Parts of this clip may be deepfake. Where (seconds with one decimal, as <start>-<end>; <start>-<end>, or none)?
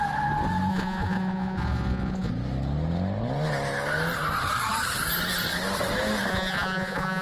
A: 0.7-2.3; 6.3-7.2